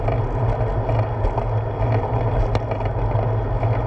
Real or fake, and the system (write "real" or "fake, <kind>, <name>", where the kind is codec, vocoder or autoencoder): real